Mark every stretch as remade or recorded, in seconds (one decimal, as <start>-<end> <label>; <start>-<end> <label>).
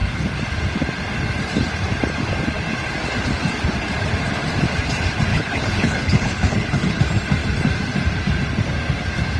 0.0-5.3 recorded; 5.3-7.0 remade; 7.0-9.4 recorded